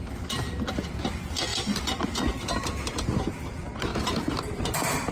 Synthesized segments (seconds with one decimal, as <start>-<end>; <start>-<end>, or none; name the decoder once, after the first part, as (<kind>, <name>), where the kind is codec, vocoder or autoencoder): 3.9-5.1 (vocoder, BigVGAN v2)